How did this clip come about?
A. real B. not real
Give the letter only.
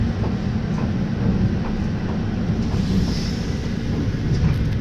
A